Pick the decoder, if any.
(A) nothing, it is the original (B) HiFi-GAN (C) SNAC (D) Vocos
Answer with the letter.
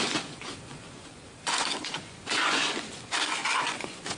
D